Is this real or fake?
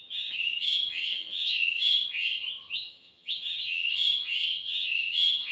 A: fake